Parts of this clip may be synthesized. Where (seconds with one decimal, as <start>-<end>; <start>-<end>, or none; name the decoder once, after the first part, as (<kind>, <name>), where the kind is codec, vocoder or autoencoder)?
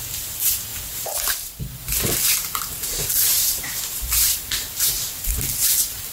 2.4-5.4 (vocoder, BigVGAN v2)